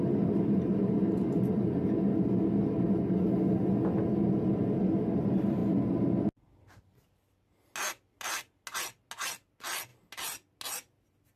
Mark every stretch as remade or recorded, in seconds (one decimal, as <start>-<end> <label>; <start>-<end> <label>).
0.0-11.4 recorded